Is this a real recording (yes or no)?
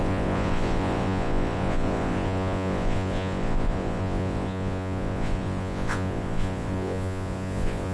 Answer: no